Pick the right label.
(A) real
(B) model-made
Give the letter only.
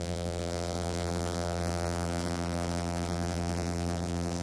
B